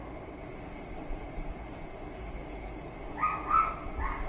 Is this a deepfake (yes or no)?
no